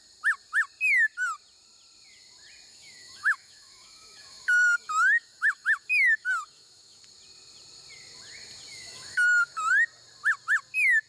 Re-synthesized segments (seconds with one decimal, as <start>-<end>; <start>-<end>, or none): 2.7-7.0; 8.7-9.7